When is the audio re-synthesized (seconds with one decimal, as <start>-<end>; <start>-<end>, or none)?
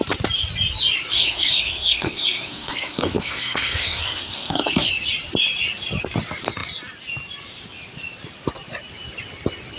1.1-4.9